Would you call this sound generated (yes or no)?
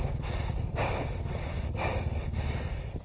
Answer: yes